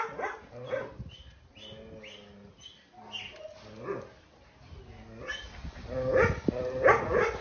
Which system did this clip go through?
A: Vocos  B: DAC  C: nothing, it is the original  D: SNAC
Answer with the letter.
C